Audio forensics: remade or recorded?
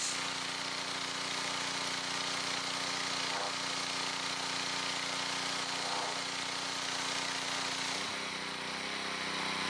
recorded